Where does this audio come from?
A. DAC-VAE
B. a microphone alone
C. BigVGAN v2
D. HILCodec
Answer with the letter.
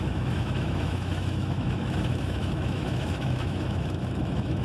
A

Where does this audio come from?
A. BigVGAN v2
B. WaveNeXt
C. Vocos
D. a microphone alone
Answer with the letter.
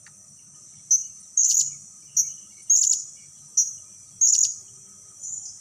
D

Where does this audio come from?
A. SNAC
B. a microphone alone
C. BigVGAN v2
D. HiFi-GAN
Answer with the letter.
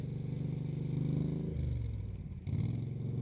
B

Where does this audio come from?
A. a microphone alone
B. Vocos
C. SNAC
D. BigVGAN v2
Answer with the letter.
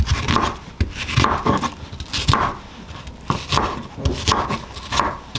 A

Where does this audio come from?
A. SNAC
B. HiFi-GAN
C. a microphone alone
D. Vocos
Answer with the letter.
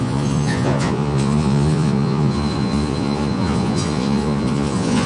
D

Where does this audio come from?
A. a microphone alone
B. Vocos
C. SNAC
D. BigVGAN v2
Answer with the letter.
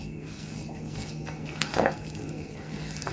C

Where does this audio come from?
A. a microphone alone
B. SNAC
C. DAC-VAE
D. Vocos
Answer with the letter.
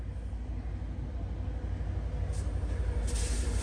A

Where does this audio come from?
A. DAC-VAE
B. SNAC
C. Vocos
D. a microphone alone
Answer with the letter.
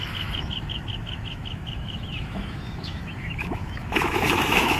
A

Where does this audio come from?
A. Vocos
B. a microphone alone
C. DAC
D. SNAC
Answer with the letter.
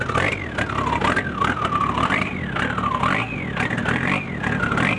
B